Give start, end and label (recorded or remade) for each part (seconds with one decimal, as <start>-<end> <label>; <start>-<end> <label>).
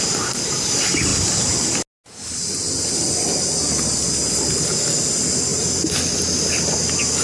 0.0-7.2 recorded